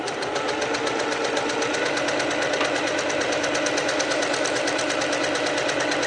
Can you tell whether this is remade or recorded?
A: recorded